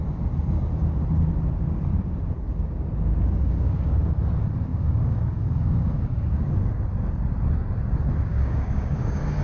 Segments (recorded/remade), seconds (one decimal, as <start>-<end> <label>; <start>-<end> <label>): 0.0-3.4 recorded; 3.4-4.0 remade; 4.0-4.7 recorded; 4.7-6.7 remade; 6.7-8.3 recorded; 8.3-9.4 remade